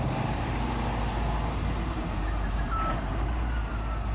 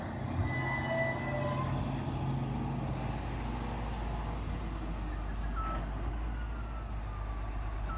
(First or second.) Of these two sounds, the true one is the second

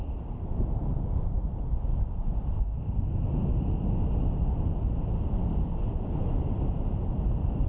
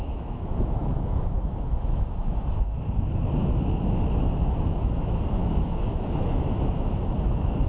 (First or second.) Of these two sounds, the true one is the first